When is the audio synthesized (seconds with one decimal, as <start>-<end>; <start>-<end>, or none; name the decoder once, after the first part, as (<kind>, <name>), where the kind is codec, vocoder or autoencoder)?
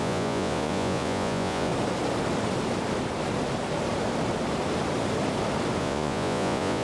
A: 0.0-1.7 (vocoder, Vocos); 5.8-6.8